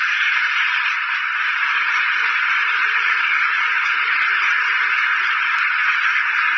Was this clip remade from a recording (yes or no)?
yes